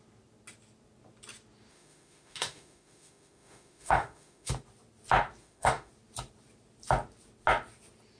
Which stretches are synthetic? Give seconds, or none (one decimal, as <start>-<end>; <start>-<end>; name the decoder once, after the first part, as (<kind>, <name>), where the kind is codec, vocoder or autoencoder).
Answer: 1.7-4.5 (autoencoder, DAC-VAE); 5.4-5.9

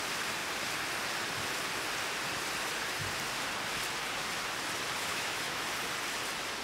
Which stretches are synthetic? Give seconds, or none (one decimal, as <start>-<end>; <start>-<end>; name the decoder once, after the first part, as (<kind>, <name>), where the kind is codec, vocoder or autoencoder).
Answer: 5.1-5.7 (autoencoder, DAC-VAE)

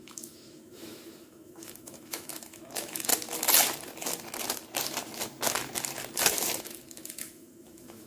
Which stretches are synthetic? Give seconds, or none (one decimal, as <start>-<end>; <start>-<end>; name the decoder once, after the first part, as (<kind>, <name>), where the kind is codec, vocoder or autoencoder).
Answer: 0.0-3.1 (autoencoder, DAC-VAE); 6.6-8.1

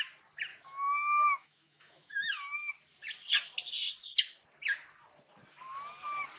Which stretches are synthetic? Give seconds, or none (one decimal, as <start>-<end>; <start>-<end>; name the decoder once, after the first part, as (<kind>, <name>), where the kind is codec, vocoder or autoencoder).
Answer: 0.5-2.7 (autoencoder, DAC-VAE)

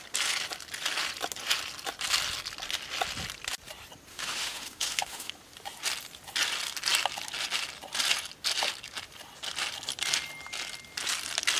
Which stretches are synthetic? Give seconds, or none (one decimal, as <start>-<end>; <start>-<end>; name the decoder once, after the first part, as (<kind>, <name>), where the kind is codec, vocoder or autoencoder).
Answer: 4.1-5.3 (autoencoder, DAC-VAE)

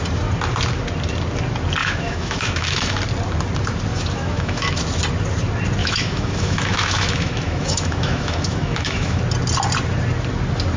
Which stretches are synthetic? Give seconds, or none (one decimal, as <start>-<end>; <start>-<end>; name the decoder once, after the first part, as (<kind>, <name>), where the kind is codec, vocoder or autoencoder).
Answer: 1.8-3.0 (autoencoder, DAC-VAE); 3.9-4.8; 5.8-9.2